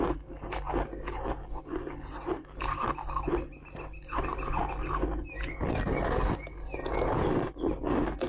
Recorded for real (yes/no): yes